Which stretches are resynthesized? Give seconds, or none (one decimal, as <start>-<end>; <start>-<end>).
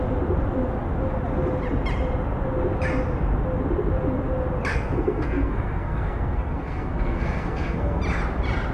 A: 4.7-8.0